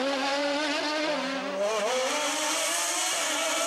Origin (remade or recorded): recorded